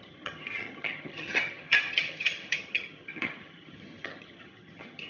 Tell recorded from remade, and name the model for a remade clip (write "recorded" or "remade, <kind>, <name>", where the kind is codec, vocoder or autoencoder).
remade, vocoder, HiFi-GAN